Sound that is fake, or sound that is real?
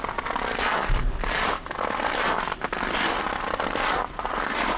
real